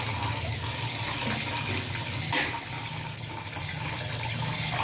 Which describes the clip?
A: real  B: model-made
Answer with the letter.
A